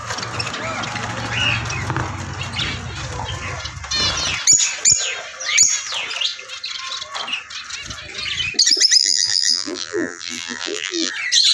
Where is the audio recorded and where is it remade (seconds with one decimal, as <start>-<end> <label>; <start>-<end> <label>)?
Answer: 0.0-9.0 recorded; 9.0-11.1 remade; 11.1-11.5 recorded